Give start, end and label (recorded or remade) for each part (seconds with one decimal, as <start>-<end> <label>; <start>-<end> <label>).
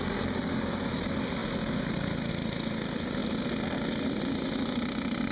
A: 0.0-5.3 recorded